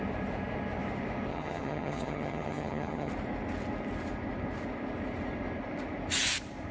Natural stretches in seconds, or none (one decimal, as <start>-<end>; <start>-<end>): 0.0-1.3; 3.1-6.7